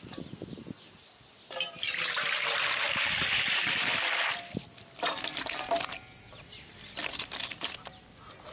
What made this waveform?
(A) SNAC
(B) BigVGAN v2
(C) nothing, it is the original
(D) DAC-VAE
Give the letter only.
C